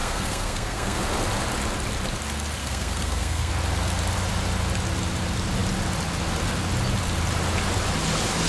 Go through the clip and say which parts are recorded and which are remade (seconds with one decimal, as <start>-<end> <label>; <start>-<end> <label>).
0.0-1.0 remade; 1.0-2.6 recorded; 2.6-3.5 remade; 3.5-8.5 recorded

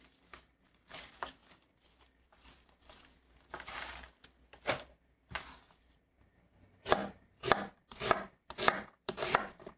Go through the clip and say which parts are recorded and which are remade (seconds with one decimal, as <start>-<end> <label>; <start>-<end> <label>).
0.0-9.8 remade

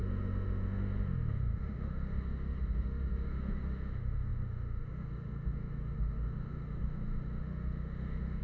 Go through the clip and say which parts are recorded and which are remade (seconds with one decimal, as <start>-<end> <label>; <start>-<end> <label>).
0.0-8.4 remade

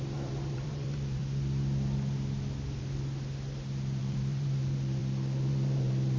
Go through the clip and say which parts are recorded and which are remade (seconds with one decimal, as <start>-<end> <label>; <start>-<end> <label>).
0.0-1.2 remade; 1.2-4.0 recorded; 4.0-5.0 remade; 5.0-5.5 recorded; 5.5-6.2 remade

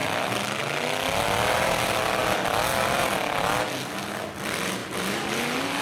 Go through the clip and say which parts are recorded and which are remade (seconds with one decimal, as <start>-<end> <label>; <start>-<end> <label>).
0.0-5.8 recorded

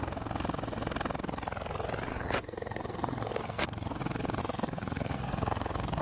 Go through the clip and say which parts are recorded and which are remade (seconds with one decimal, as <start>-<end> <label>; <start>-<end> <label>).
0.0-2.1 recorded; 2.1-4.0 remade; 4.0-4.4 recorded; 4.4-6.0 remade

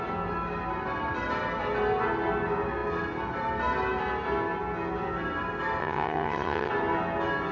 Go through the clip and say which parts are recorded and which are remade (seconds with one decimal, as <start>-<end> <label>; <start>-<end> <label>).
0.0-5.8 recorded; 5.8-6.7 remade; 6.7-7.5 recorded

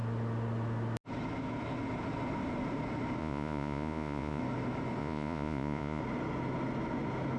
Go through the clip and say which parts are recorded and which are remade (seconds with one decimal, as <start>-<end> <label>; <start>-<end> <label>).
0.0-3.2 recorded; 3.2-4.4 remade; 4.4-5.0 recorded; 5.0-6.0 remade; 6.0-7.4 recorded